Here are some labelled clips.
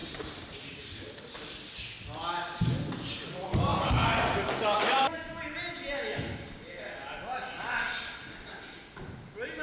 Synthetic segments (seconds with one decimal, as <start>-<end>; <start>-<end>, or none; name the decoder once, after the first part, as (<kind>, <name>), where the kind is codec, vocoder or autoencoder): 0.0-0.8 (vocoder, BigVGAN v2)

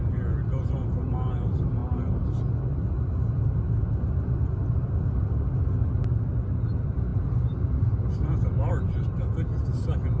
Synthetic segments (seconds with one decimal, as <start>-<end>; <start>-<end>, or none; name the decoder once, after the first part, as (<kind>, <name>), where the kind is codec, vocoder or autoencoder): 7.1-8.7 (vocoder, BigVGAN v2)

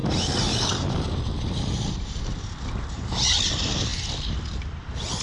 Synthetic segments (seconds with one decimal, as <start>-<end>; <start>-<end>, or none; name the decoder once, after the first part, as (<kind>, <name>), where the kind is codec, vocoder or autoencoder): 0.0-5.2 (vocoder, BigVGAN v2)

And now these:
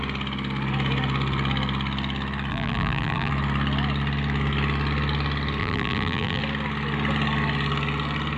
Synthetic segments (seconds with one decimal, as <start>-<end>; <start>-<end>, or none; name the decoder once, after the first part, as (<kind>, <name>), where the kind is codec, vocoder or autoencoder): 2.5-3.3 (vocoder, BigVGAN v2); 5.6-6.4

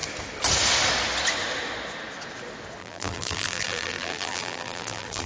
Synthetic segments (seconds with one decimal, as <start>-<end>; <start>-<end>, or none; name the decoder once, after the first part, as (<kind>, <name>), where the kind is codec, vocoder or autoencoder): 2.8-5.3 (vocoder, BigVGAN v2)